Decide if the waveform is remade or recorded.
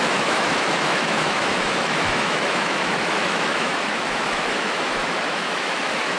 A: remade